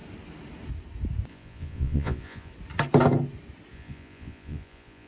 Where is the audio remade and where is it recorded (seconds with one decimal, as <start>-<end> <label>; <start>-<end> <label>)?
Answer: 0.0-1.3 recorded; 1.3-2.5 remade; 2.5-3.7 recorded; 3.7-5.1 remade